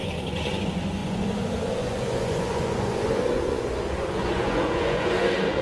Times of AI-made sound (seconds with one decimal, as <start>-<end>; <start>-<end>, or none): 0.0-5.6